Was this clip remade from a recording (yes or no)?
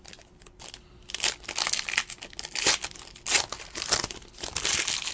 no